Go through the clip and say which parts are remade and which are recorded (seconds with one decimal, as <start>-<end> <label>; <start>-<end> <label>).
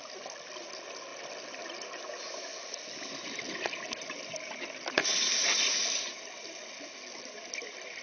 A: 0.0-8.0 recorded